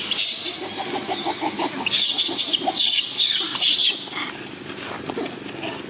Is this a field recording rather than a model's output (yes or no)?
yes